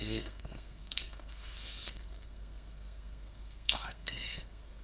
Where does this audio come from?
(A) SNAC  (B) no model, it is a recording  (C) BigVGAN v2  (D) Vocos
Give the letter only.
A